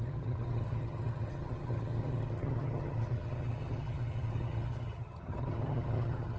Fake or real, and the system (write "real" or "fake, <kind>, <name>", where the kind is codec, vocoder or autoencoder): fake, vocoder, HiFi-GAN